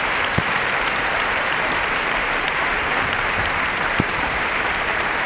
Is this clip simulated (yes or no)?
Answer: yes